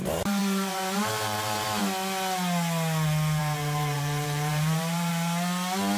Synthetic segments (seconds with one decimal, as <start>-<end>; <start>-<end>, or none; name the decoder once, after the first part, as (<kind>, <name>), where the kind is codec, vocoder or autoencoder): 0.0-1.8 (vocoder, BigVGAN v2); 3.4-5.1